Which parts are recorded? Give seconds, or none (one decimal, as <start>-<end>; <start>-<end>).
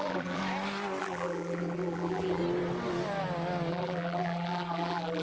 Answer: 0.4-1.0; 2.4-3.7